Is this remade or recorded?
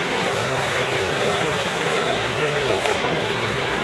remade